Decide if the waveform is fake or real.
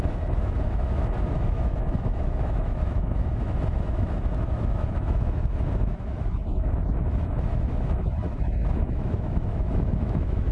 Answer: fake